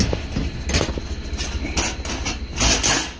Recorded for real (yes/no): yes